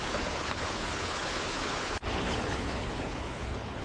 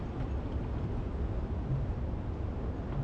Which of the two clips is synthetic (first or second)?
first